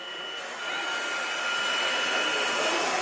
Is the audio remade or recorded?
recorded